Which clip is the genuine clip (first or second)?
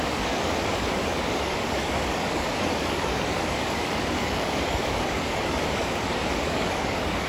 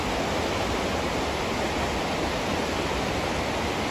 second